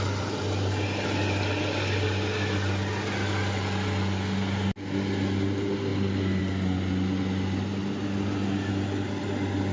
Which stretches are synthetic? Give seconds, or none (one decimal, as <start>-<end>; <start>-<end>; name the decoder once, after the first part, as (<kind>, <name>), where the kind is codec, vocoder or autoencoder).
none